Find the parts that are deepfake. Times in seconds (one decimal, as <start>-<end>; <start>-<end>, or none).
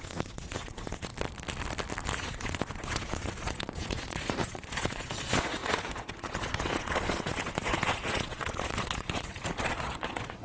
0.0-1.1; 2.2-10.4